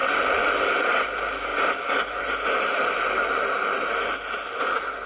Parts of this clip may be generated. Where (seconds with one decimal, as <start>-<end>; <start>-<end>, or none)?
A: 1.5-3.3